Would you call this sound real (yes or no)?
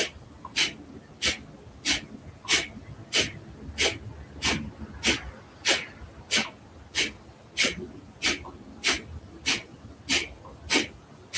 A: yes